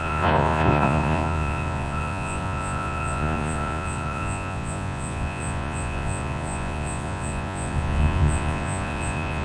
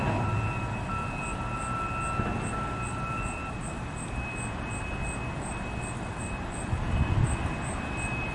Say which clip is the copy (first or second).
first